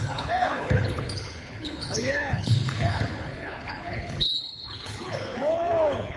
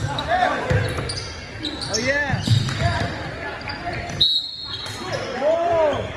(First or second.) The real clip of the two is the second